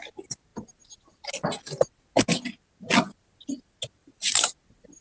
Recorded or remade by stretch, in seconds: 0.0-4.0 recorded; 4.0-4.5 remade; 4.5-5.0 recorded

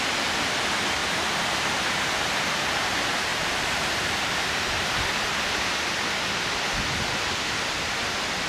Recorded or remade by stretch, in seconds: 0.0-1.0 recorded; 1.0-2.8 remade; 2.8-3.3 recorded; 3.3-5.9 remade; 5.9-8.5 recorded

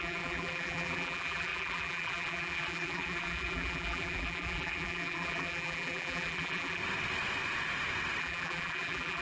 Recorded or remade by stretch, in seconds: 0.0-6.8 remade; 6.8-8.2 recorded; 8.2-9.2 remade

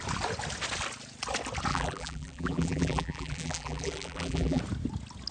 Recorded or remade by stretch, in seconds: 0.0-1.7 recorded; 1.7-4.6 remade; 4.6-5.3 recorded

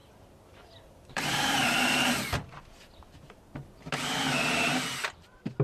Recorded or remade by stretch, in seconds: 0.0-3.4 remade; 3.4-5.6 recorded

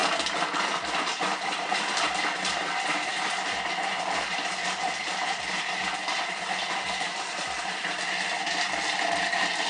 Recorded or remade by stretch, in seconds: 0.0-2.2 remade; 2.2-9.7 recorded